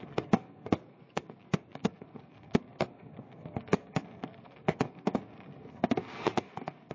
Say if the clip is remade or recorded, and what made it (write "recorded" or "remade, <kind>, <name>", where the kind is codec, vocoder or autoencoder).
remade, codec, SNAC